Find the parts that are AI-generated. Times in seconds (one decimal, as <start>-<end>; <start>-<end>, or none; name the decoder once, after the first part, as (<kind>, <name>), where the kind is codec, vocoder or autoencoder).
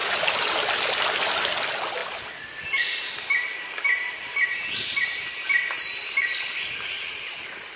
0.0-0.5 (vocoder, BigVGAN v2); 2.0-6.7